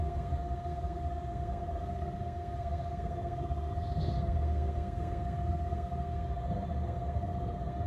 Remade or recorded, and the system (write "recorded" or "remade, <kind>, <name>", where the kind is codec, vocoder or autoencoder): remade, codec, SNAC